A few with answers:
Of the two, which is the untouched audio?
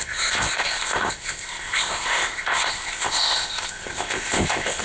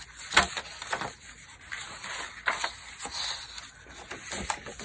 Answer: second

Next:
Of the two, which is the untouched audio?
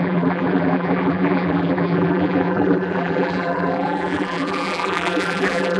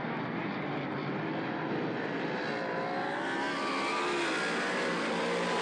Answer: second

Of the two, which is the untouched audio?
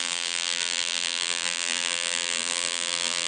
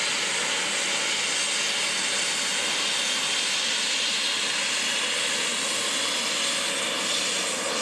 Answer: second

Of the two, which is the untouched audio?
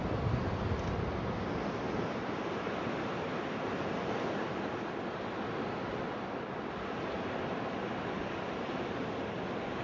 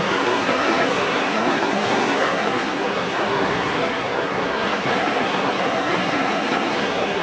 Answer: first